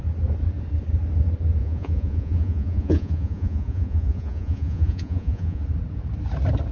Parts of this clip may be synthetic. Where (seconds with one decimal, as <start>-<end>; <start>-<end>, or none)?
1.6-5.6